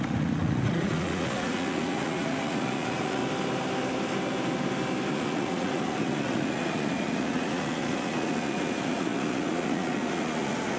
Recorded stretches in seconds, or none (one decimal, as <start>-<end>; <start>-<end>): 3.2-5.1